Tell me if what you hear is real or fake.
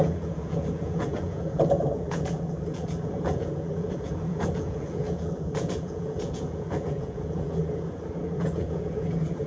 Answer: fake